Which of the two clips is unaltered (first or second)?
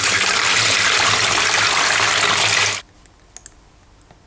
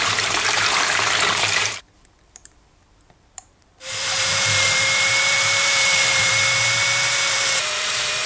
first